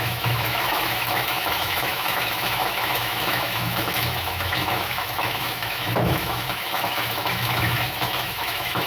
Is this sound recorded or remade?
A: remade